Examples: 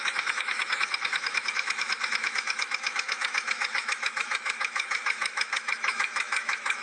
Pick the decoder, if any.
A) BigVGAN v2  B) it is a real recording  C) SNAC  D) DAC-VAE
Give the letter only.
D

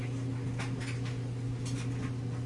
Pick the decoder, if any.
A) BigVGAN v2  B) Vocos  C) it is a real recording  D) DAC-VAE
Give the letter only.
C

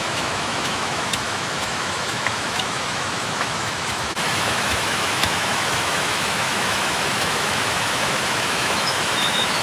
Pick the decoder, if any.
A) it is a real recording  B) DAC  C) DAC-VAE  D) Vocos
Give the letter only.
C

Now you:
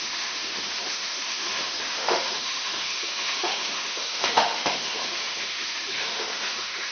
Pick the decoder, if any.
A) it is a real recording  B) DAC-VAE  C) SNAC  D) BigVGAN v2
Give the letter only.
B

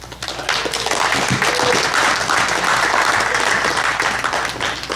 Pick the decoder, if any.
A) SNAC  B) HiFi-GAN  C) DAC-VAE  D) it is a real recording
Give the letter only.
D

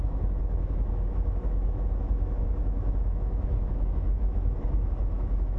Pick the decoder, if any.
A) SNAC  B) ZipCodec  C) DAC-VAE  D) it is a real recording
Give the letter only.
C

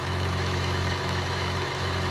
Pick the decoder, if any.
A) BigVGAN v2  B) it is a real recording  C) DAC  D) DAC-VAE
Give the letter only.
D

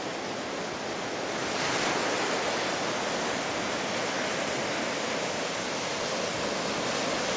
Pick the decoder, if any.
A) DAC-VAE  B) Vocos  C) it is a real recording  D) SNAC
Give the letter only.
C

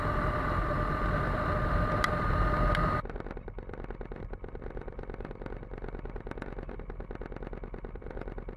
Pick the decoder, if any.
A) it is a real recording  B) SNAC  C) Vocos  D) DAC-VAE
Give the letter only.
A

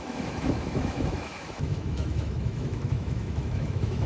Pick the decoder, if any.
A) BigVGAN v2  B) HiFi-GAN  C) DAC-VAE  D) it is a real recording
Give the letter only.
C